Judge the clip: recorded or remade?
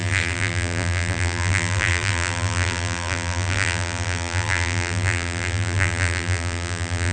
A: remade